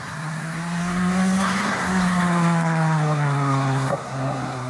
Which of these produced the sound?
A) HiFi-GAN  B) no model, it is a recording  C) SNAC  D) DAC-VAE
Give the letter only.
C